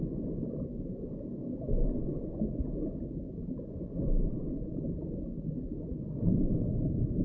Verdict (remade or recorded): recorded